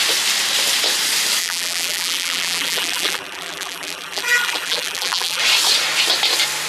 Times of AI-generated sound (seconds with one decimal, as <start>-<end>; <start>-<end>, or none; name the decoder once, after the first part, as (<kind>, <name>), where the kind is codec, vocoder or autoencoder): 1.4-5.4 (vocoder, BigVGAN v2)